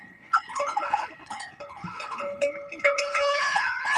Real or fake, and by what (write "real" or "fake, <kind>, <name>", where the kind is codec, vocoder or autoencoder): fake, codec, HILCodec